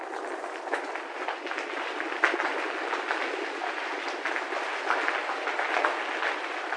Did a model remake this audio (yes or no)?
no